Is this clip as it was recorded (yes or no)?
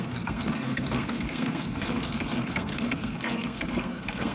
no